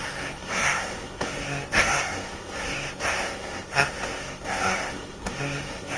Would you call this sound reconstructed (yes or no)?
yes